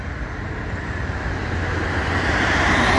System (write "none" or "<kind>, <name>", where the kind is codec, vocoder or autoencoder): none